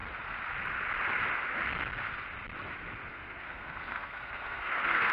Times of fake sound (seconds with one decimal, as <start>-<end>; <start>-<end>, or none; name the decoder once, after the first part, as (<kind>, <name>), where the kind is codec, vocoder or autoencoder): 3.1-5.1 (codec, SNAC)

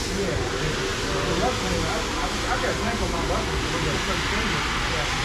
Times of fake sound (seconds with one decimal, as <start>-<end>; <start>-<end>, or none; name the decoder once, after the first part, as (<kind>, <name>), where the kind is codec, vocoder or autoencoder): none

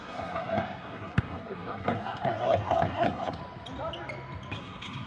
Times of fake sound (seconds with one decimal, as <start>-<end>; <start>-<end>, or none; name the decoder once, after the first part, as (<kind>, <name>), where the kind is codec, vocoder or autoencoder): 0.0-3.4 (codec, SNAC); 4.6-5.1

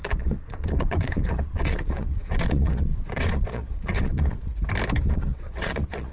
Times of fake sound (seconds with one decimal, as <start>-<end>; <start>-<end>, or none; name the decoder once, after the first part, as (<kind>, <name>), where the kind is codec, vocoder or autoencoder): 0.0-4.5 (vocoder, Vocos); 5.1-6.1

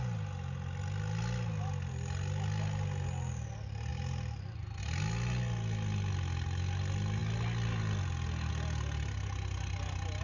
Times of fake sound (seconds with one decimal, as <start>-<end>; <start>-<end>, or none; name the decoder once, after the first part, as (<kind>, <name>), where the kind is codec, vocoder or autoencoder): none